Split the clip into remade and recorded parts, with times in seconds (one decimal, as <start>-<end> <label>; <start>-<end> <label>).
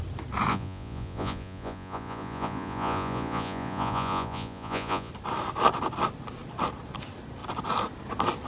0.0-0.5 recorded; 0.5-5.1 remade; 5.1-8.5 recorded